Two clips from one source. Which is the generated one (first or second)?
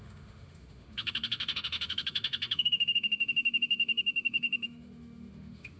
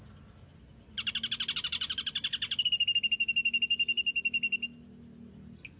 first